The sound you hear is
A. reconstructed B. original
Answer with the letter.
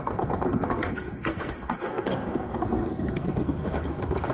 A